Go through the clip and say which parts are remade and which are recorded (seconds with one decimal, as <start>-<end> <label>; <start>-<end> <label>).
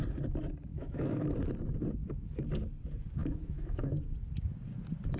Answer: 0.0-0.7 recorded; 0.7-1.3 remade; 1.3-2.0 recorded; 2.0-2.5 remade; 2.5-3.2 recorded; 3.2-4.1 remade; 4.1-5.2 recorded